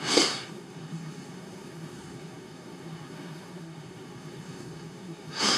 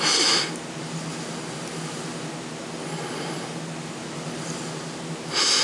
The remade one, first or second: first